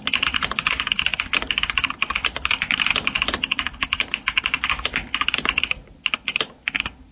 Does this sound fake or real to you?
real